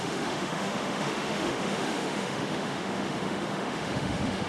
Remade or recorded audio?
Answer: remade